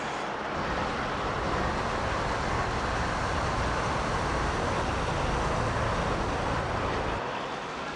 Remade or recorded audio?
recorded